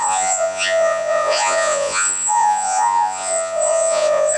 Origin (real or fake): fake